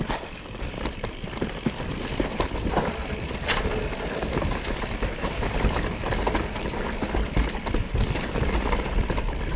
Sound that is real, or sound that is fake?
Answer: fake